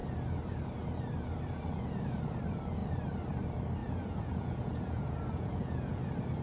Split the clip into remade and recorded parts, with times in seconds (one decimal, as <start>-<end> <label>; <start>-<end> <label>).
0.0-3.8 recorded; 3.8-6.0 remade; 6.0-6.4 recorded